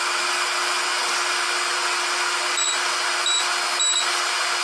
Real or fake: real